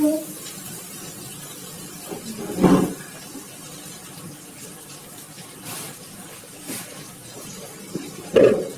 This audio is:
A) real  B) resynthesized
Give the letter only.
B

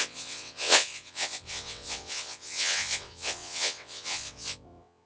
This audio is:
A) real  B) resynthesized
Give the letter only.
B